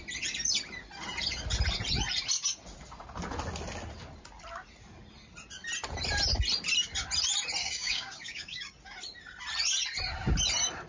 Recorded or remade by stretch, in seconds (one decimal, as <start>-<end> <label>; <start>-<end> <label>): 0.0-7.6 recorded; 7.6-8.7 remade; 8.7-10.9 recorded